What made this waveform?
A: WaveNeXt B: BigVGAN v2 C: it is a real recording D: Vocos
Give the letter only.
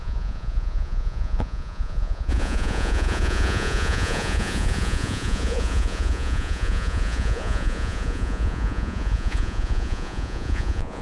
D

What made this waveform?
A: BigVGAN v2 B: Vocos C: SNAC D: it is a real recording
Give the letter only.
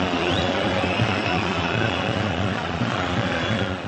B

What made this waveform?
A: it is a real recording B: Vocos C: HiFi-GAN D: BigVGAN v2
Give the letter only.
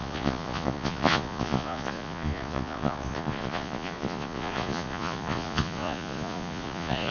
B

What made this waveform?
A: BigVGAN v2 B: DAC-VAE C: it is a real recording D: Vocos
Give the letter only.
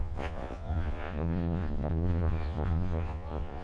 D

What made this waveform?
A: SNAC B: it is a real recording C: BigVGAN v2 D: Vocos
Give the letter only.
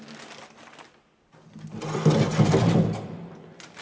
B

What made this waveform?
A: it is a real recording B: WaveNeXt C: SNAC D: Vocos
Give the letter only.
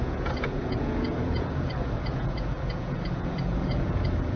D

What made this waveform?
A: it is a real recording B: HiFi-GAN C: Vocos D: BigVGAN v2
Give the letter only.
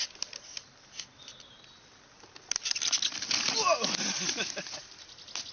A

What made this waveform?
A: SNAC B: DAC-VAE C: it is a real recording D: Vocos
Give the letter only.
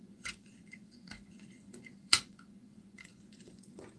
D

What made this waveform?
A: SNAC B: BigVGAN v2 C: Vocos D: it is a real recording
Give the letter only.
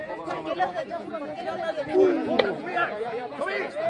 C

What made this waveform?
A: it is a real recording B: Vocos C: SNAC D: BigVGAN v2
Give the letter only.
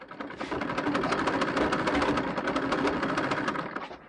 A